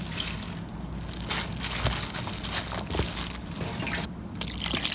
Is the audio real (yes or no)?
yes